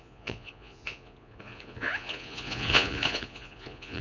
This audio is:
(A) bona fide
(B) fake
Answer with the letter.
B